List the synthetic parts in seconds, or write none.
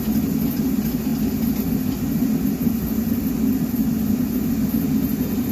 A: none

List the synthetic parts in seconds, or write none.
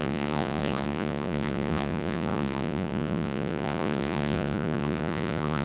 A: 0.0-5.6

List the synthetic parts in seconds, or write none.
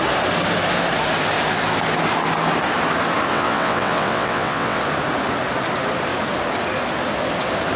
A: 3.3-4.8